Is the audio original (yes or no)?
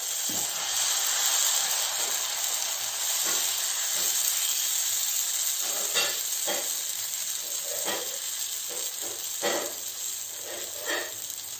yes